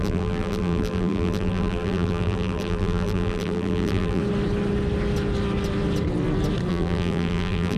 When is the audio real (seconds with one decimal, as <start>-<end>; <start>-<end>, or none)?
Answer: 4.2-6.7